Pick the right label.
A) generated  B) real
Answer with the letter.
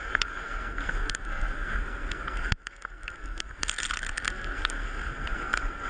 A